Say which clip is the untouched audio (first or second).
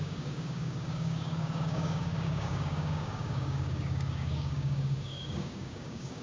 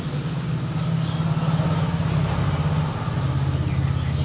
second